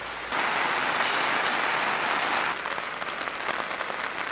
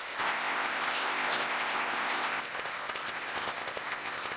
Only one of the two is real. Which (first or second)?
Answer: first